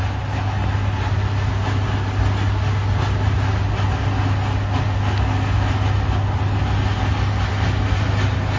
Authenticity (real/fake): real